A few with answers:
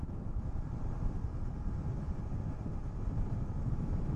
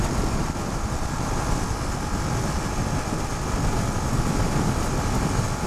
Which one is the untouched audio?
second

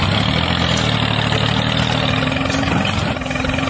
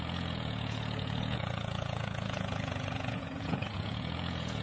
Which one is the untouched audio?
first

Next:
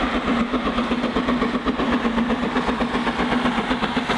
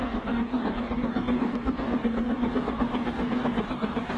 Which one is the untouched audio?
first